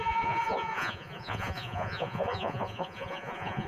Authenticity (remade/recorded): remade